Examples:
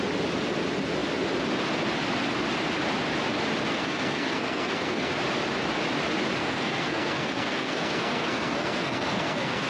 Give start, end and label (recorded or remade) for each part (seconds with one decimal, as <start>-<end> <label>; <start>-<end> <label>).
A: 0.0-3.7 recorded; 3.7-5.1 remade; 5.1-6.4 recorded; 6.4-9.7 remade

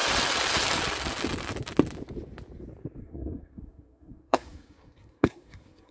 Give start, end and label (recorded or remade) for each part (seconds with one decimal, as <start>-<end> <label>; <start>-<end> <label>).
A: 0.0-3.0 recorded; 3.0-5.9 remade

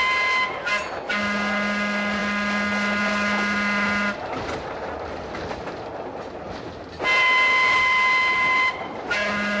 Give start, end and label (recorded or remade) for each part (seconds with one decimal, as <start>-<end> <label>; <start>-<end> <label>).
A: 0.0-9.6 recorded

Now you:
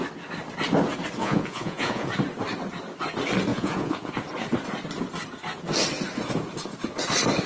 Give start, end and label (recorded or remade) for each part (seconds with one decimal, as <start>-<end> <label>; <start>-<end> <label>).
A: 0.0-1.2 recorded; 1.2-2.1 remade; 2.1-3.5 recorded; 3.5-4.1 remade; 4.1-7.5 recorded

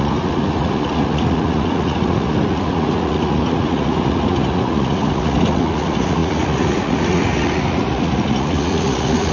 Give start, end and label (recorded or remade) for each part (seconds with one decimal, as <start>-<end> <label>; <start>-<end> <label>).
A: 0.0-9.3 remade